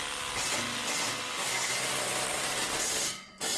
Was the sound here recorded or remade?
recorded